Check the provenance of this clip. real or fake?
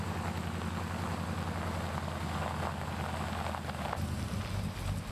real